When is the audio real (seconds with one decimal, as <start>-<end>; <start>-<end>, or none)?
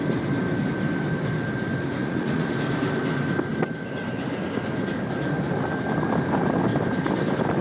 0.0-2.0; 2.5-7.6